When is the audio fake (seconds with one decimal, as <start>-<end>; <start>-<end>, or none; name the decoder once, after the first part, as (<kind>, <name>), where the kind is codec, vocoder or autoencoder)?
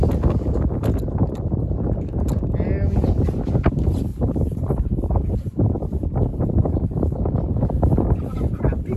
4.1-5.7 (vocoder, BigVGAN v2); 6.3-7.3